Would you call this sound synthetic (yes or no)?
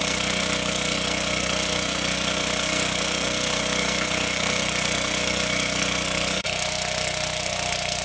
yes